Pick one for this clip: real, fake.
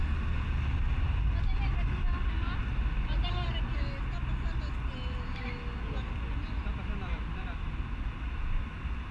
real